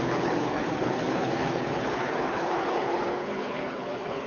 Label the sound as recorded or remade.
remade